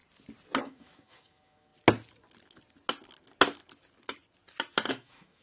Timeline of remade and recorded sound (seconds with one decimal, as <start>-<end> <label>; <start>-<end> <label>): 0.0-0.6 recorded; 0.6-1.7 remade; 1.7-4.9 recorded; 4.9-5.4 remade